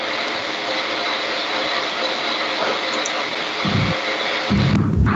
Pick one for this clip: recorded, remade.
recorded